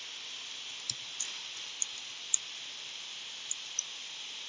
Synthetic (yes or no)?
no